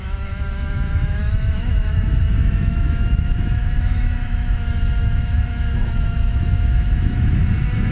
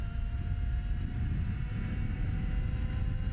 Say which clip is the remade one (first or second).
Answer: first